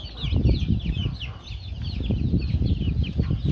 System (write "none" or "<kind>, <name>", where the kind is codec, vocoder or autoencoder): none